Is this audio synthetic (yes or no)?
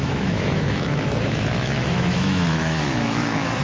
yes